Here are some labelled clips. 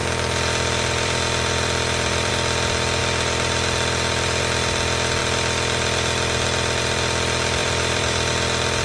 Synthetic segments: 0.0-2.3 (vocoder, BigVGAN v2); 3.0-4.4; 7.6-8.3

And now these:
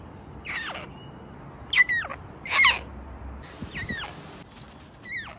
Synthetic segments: none

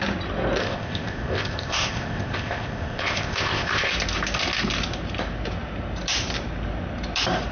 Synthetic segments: 0.6-3.9 (codec, ZipCodec)

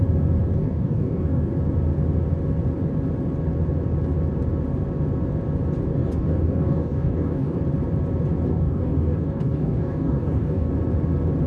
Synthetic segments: 0.5-1.5 (codec, DAC); 5.9-7.6; 8.5-10.7

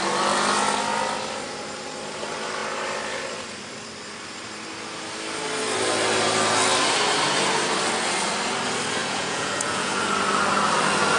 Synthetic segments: 9.0-10.0 (vocoder, Vocos)